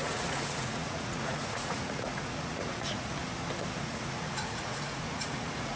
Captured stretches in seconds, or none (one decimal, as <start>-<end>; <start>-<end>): 3.2-3.8